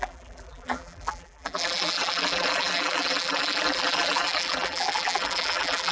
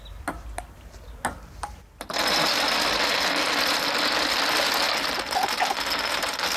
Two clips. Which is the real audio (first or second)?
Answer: second